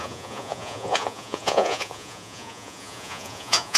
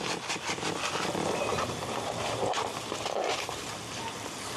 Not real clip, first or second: first